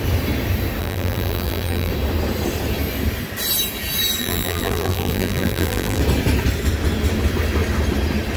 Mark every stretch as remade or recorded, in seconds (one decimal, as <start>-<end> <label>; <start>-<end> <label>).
0.0-0.8 recorded; 0.8-1.9 remade; 1.9-4.2 recorded; 4.2-6.0 remade; 6.0-8.4 recorded